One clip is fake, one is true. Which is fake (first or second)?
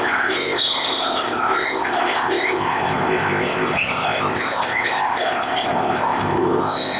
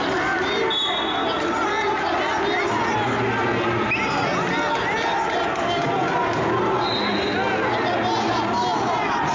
first